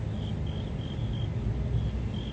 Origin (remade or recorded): recorded